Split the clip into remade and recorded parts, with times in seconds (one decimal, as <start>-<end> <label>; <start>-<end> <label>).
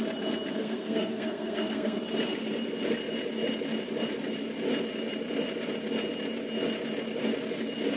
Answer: 0.0-0.6 recorded; 0.6-2.0 remade; 2.0-8.0 recorded